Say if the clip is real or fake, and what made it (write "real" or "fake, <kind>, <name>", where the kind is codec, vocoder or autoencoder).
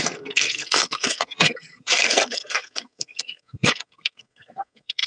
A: fake, codec, SNAC